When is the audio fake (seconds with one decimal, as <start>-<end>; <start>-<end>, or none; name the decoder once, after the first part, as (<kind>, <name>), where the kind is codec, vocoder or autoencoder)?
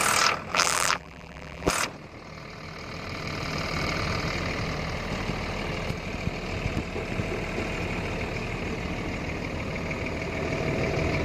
0.5-1.7 (vocoder, BigVGAN v2)